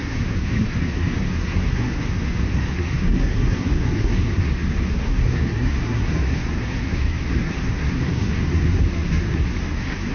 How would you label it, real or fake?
fake